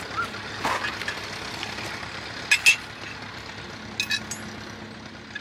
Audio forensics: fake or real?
real